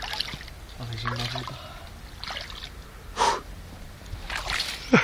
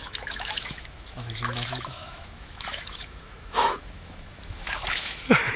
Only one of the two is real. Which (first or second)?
first